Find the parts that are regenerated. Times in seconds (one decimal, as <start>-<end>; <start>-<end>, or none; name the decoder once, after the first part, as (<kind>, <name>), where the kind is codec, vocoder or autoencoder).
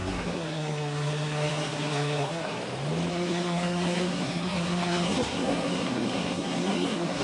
0.0-2.6 (codec, SNAC); 3.1-7.2